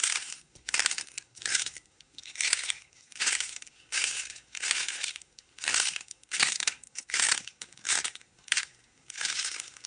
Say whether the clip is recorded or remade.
remade